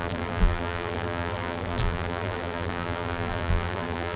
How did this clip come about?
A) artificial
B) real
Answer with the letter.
A